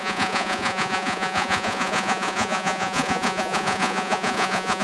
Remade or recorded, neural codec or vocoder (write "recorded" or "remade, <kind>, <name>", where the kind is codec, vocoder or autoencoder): remade, vocoder, Vocos